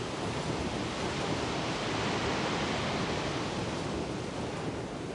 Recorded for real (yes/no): yes